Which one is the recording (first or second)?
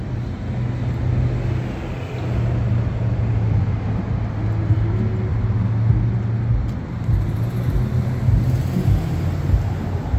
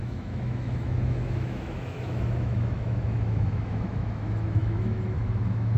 first